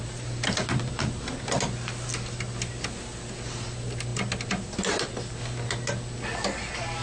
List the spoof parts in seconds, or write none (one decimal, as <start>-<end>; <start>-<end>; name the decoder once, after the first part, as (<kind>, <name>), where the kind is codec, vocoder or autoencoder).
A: none